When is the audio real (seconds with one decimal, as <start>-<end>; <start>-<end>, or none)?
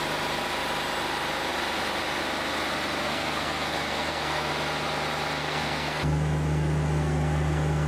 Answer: 0.0-3.0; 4.5-5.4